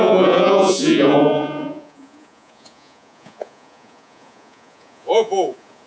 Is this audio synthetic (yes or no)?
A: yes